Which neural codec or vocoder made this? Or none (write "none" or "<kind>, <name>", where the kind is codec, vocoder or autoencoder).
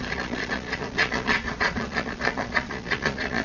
vocoder, Vocos